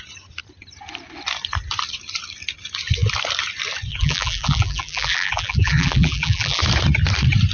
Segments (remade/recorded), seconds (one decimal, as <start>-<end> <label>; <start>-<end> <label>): 0.0-3.9 recorded; 3.9-6.6 remade; 6.6-7.5 recorded